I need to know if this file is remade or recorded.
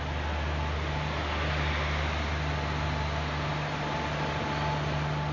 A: recorded